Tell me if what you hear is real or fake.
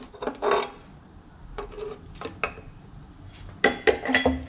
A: real